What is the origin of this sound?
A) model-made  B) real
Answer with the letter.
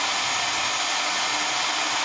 B